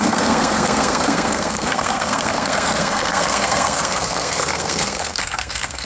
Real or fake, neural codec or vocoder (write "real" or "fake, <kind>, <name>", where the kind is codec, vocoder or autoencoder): fake, codec, SNAC